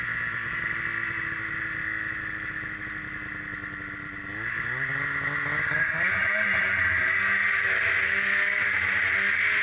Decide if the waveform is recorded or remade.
recorded